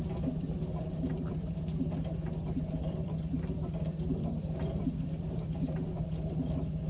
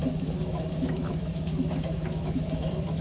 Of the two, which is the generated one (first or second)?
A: second